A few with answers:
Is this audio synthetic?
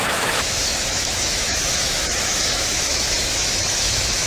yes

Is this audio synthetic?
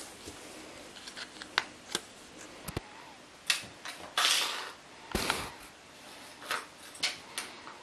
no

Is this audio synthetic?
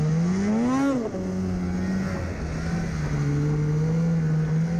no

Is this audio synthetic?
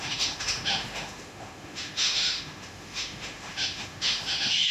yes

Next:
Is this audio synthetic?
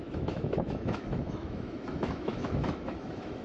yes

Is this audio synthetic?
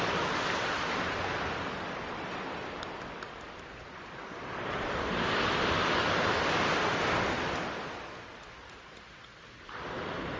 no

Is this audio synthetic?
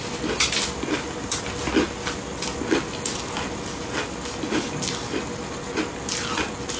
no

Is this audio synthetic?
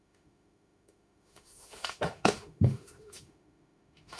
yes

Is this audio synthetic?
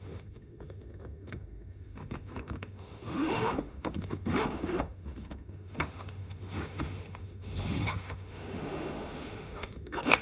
yes